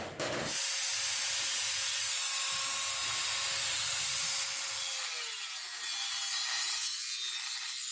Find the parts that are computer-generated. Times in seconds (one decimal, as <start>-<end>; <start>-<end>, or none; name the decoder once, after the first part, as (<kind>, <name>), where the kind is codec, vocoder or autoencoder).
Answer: 0.9-2.0 (vocoder, BigVGAN v2); 3.2-4.2